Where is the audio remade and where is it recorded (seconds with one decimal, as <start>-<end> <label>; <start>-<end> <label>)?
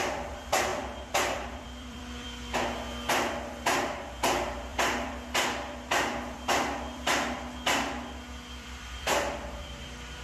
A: 0.0-10.2 remade